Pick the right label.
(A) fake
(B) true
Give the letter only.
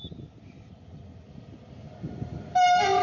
B